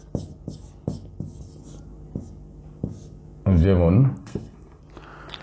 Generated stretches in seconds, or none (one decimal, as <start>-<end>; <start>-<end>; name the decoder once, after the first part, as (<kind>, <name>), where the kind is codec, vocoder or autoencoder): 4.2-4.8 (codec, SNAC)